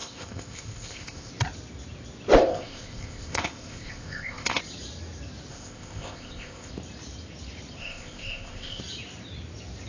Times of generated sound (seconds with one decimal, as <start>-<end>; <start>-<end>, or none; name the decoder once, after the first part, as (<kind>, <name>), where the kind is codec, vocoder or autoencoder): 0.0-1.3 (codec, ZipCodec); 2.5-4.6; 5.5-6.7; 7.8-8.8